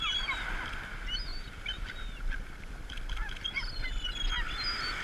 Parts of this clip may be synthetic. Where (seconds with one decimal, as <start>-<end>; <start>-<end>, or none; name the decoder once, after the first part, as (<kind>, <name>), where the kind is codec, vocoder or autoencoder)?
1.3-4.1 (vocoder, BigVGAN v2)